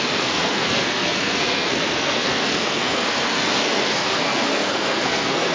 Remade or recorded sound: remade